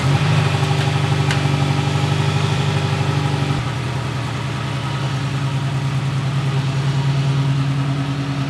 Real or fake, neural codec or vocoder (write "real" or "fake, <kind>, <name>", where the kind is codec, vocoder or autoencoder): fake, vocoder, BigVGAN v2